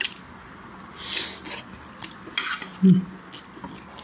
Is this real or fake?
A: real